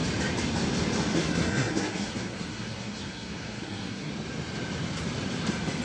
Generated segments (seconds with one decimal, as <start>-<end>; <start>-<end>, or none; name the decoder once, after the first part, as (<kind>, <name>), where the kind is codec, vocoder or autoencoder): 1.1-4.1 (codec, SNAC)

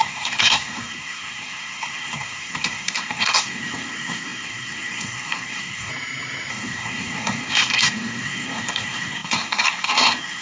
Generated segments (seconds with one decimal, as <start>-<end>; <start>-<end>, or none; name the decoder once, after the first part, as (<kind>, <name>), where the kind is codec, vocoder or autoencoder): 0.0-5.9 (codec, SNAC); 6.5-10.4

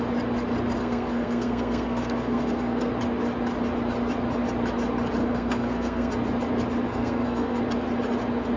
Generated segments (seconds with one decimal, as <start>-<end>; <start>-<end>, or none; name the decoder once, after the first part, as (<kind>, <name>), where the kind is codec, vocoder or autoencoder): 0.8-2.9 (codec, SNAC); 5.2-6.1; 6.9-7.6

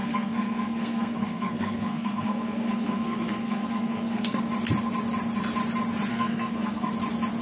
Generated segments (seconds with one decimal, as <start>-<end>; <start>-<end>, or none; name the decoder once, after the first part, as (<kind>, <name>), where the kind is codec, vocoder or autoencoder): 0.0-4.4 (codec, SNAC); 6.1-6.9

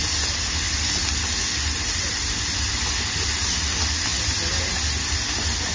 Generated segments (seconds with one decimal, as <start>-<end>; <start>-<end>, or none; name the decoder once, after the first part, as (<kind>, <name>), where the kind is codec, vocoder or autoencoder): none

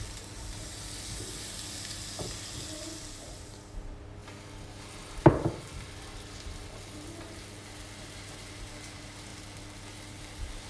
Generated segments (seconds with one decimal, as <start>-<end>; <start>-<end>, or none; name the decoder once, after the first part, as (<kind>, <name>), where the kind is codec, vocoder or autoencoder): none

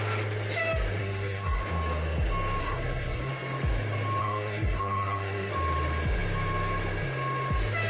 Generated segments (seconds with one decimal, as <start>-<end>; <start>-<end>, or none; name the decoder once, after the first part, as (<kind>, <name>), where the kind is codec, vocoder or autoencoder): 1.0-1.6 (codec, SNAC); 2.6-3.3; 4.2-5.5

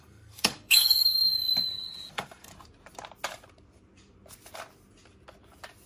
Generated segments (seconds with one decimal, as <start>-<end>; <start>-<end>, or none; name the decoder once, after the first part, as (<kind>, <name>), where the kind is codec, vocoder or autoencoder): 0.0-1.3 (codec, SNAC); 2.1-2.5